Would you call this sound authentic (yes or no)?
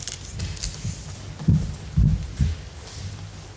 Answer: yes